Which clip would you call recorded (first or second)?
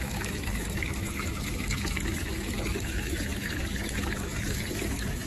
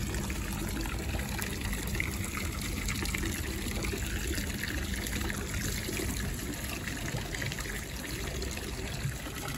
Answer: second